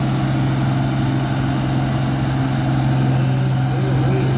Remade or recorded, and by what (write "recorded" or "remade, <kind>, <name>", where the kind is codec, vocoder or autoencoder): recorded